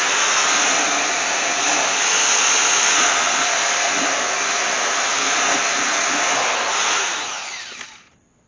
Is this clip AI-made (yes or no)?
no